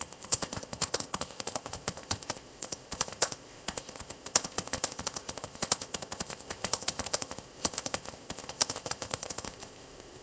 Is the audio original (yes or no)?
no